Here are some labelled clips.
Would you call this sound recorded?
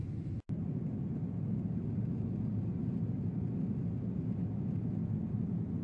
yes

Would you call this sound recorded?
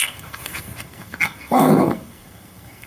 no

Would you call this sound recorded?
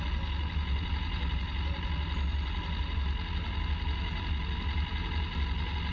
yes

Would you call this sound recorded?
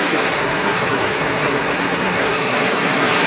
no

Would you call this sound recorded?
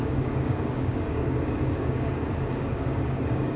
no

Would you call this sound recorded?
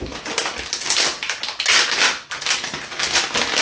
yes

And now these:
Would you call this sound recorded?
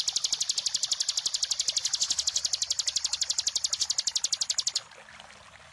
yes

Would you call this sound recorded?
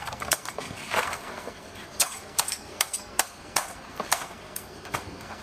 no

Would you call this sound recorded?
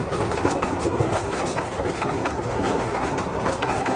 no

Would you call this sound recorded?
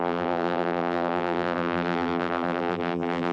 no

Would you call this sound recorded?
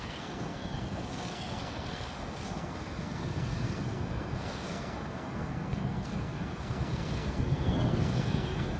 no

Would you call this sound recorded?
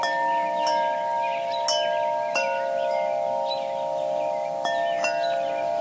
yes